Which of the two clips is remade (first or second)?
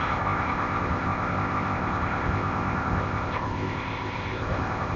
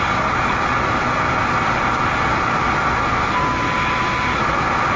first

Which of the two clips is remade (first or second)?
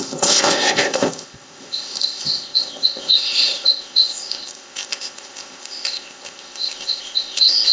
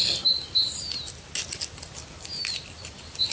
first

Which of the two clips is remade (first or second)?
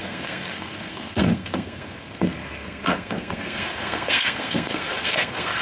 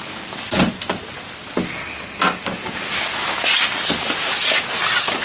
first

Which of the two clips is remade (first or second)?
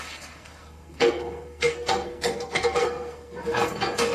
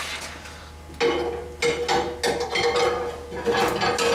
first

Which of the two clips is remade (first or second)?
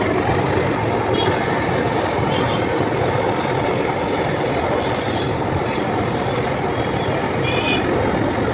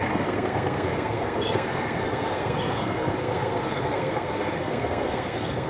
second